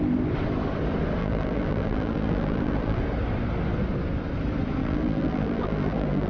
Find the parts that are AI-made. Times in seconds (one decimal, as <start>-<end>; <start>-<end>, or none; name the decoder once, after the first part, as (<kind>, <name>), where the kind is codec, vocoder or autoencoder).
1.2-3.0 (vocoder, BigVGAN v2); 4.8-6.3